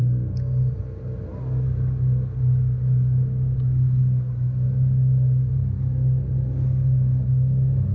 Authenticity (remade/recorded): recorded